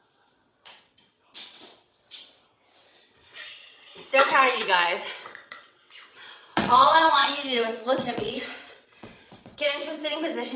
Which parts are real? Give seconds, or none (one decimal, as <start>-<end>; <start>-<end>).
none